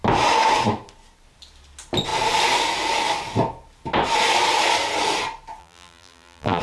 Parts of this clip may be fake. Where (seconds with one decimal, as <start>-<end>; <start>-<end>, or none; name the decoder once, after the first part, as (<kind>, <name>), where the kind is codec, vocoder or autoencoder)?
5.6-6.6 (vocoder, BigVGAN v2)